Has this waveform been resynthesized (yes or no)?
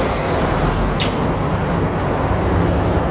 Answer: no